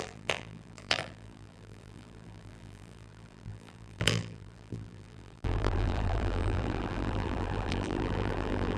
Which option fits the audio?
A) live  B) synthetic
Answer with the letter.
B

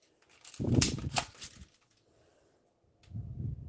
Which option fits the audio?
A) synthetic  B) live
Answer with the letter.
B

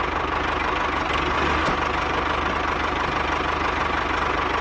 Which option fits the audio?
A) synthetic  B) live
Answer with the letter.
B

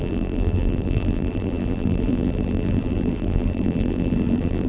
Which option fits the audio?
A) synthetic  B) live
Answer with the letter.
A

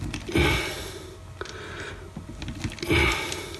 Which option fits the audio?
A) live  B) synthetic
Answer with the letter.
A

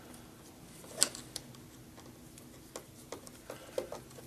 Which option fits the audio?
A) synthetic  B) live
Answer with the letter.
B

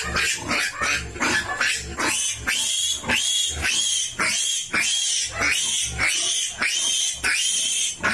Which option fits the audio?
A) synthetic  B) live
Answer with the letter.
B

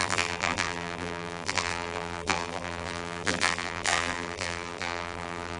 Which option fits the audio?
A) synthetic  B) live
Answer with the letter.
A